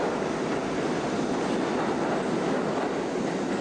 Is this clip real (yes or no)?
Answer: yes